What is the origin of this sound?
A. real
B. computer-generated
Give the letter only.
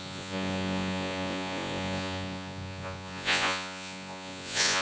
B